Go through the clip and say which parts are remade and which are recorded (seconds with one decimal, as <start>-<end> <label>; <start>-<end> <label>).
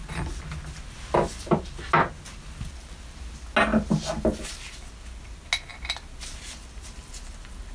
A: 0.0-7.7 recorded